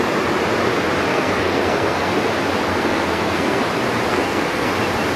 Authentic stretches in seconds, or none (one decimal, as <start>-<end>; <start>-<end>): 0.0-1.1; 2.1-2.7; 3.6-4.1; 4.7-5.2